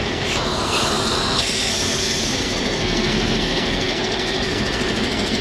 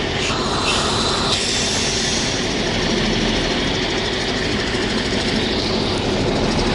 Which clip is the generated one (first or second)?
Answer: first